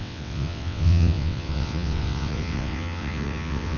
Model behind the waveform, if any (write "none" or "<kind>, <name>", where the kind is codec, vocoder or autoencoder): vocoder, WaveNeXt